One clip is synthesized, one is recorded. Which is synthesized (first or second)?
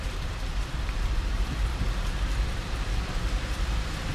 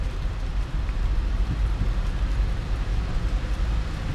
first